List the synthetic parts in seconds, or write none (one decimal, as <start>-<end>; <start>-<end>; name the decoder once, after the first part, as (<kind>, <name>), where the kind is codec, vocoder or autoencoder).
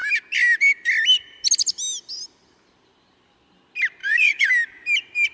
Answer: 4.0-4.5 (vocoder, Vocos)